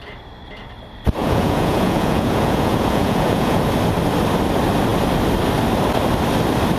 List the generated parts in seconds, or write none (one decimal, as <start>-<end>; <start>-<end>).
1.2-3.6

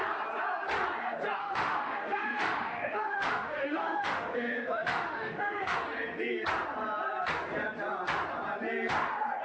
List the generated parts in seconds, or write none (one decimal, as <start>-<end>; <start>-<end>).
1.4-5.8

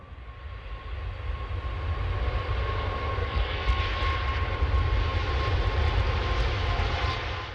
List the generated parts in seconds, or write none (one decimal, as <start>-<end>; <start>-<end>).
3.2-3.8

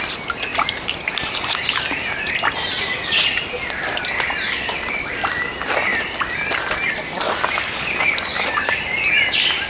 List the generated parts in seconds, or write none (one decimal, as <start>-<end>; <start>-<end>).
none

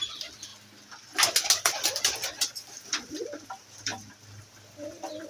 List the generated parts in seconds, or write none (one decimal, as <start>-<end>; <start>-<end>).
0.0-0.5; 3.1-3.9

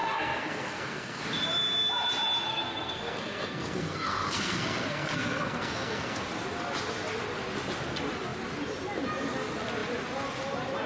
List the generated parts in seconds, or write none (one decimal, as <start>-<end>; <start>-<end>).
0.0-1.2; 2.5-6.2

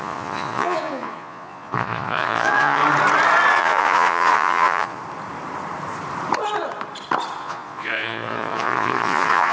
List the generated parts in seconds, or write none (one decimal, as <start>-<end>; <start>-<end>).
0.0-2.8; 3.5-5.0; 7.4-9.5